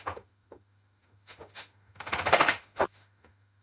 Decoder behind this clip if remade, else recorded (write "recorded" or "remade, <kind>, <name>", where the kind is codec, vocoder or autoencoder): remade, autoencoder, DAC-VAE